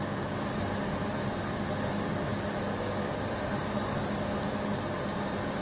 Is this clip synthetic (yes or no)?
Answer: no